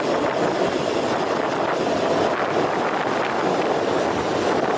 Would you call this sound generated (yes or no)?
no